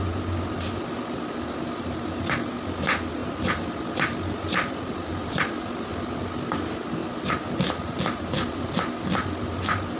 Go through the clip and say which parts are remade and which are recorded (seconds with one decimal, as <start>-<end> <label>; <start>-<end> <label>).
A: 0.0-3.2 recorded; 3.2-5.8 remade; 5.8-10.0 recorded

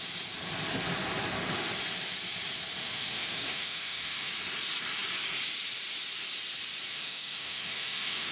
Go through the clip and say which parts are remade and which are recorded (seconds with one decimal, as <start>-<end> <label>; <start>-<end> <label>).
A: 0.0-2.8 recorded; 2.8-4.3 remade; 4.3-6.9 recorded; 6.9-8.3 remade

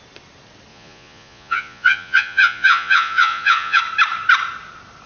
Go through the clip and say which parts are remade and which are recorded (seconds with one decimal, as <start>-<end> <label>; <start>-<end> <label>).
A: 0.0-0.7 recorded; 0.7-3.8 remade; 3.8-5.1 recorded

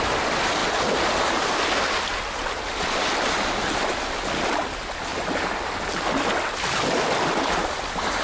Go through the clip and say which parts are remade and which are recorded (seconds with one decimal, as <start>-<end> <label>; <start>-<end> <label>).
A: 0.0-8.2 recorded

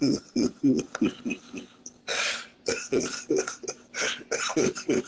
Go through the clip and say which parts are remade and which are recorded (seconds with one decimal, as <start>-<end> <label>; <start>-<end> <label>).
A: 0.0-0.8 remade; 0.8-2.1 recorded; 2.1-3.0 remade; 3.0-5.1 recorded